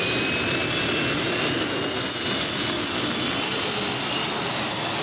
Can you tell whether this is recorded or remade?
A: recorded